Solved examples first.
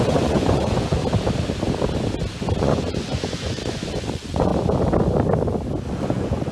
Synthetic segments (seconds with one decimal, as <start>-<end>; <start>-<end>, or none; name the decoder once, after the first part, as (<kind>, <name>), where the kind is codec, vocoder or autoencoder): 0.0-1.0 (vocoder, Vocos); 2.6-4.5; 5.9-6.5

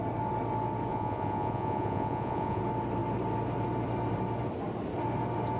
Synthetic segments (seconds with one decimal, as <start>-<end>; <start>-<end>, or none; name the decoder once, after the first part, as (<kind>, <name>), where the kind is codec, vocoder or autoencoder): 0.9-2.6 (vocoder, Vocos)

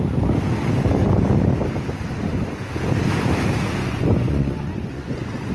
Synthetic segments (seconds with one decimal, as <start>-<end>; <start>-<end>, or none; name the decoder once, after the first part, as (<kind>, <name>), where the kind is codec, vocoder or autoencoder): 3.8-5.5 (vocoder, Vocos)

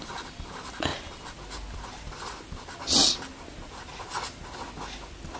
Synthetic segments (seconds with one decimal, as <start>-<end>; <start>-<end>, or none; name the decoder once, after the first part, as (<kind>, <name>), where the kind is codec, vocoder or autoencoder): none

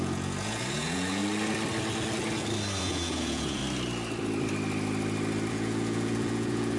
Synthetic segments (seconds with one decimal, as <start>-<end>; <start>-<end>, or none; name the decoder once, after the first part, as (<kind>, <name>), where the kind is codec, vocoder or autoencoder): 0.0-1.2 (vocoder, Vocos); 2.8-3.6; 5.5-6.8

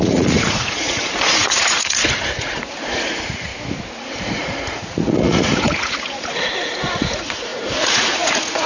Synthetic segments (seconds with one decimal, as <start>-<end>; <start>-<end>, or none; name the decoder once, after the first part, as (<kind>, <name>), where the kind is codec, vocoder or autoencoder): 0.0-3.5 (vocoder, Vocos); 4.2-8.7